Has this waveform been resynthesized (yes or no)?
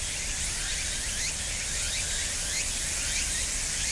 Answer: no